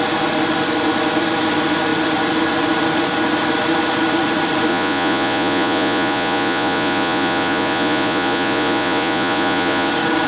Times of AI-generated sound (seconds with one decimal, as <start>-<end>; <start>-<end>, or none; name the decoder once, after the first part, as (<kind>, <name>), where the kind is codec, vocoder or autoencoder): 4.7-9.9 (vocoder, Vocos)